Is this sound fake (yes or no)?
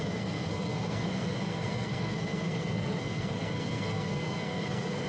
yes